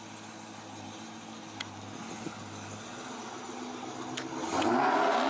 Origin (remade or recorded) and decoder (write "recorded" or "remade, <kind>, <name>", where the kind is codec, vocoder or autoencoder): recorded